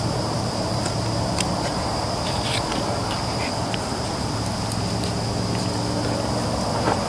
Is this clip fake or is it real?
real